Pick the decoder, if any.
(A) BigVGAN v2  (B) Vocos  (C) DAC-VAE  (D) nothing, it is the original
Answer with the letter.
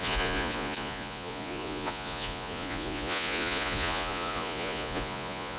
B